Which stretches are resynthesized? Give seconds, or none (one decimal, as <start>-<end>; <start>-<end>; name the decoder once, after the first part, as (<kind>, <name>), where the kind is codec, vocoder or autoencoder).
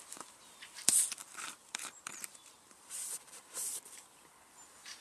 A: 1.2-4.2 (vocoder, BigVGAN v2)